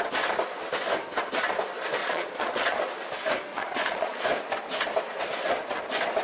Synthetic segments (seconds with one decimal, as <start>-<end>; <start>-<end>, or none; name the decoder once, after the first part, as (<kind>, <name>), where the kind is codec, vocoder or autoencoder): 2.0-2.8 (vocoder, Vocos); 3.5-4.2

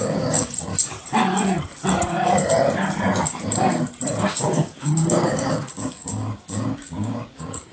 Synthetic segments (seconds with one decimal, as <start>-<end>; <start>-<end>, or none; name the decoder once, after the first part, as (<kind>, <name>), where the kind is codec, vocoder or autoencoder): 0.0-0.7 (codec, DAC); 4.2-7.7

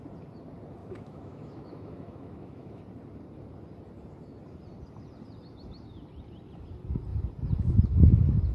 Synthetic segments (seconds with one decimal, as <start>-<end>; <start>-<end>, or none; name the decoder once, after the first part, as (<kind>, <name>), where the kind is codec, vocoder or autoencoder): 0.8-2.8 (autoencoder, DAC-VAE)

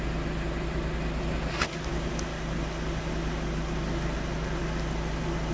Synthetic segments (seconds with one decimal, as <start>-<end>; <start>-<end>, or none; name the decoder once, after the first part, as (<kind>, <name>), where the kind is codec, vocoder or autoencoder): none

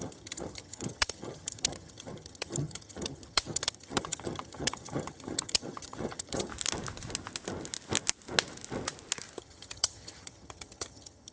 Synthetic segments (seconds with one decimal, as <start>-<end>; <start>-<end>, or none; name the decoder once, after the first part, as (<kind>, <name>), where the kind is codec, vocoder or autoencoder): 0.0-6.5 (vocoder, HiFi-GAN); 9.4-11.3

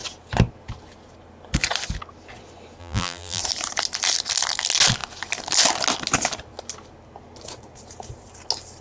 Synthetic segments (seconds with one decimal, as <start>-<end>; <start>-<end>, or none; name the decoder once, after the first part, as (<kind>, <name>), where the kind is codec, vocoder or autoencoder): 2.8-3.4 (vocoder, BigVGAN v2)

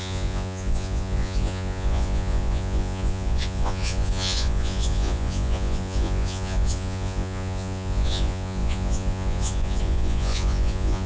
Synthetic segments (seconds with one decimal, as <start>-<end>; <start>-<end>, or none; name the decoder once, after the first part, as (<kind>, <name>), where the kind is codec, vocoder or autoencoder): 0.0-11.1 (vocoder, Vocos)